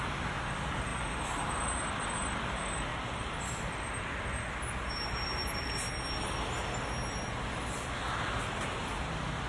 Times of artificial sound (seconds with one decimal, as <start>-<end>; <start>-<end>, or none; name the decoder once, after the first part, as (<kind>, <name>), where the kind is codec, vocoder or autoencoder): none